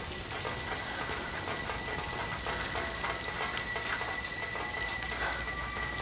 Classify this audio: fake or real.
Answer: real